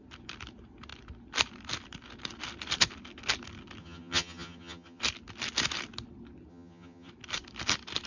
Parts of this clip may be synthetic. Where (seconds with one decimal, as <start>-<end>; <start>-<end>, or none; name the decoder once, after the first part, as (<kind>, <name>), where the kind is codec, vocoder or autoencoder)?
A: 3.8-5.0 (vocoder, HiFi-GAN); 6.5-7.1